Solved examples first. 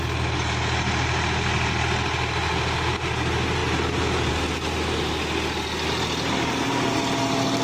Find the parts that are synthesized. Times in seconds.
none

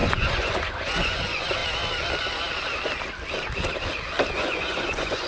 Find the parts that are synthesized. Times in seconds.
0.0-1.6; 4.3-5.3

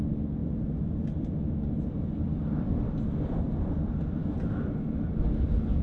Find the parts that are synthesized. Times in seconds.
none